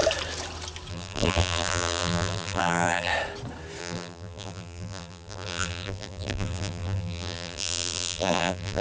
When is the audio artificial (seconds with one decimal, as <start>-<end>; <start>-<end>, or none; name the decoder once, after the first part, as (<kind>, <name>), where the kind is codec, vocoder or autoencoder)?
0.9-3.1 (vocoder, BigVGAN v2); 3.8-8.8